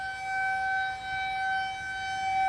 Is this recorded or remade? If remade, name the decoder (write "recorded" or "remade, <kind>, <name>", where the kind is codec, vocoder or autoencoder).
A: recorded